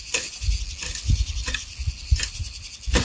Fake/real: real